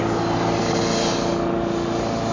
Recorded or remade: recorded